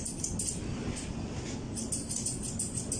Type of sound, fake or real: real